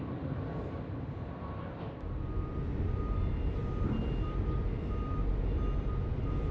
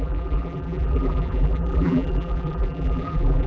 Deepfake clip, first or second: second